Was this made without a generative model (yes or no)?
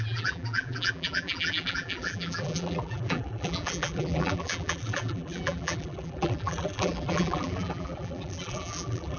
no